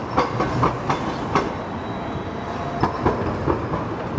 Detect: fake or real real